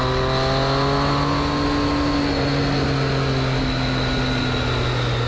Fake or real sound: real